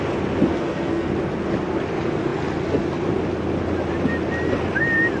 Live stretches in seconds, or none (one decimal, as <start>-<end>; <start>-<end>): 0.0-0.5; 1.1-5.2